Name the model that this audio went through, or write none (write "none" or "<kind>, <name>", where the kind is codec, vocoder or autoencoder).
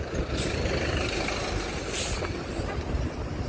none